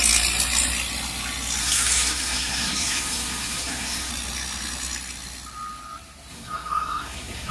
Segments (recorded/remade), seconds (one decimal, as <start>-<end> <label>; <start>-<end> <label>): 0.0-1.6 recorded; 1.6-4.1 remade; 4.1-6.3 recorded; 6.3-7.5 remade